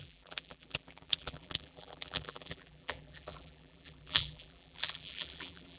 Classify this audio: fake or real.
fake